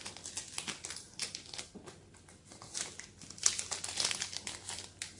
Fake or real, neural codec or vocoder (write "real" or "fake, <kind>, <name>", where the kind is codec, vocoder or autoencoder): real